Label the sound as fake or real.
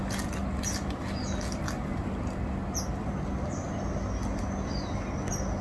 real